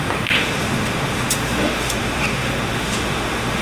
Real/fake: fake